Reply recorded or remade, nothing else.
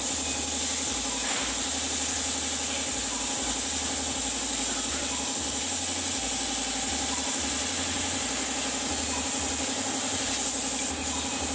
recorded